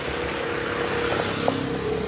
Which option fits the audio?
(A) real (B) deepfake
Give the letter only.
A